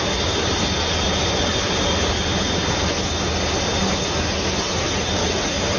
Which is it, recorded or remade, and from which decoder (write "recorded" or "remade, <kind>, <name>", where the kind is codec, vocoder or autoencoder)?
recorded